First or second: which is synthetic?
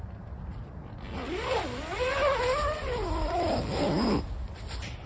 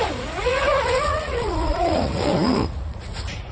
second